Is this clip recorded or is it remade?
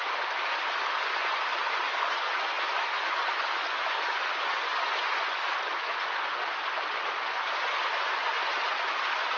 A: remade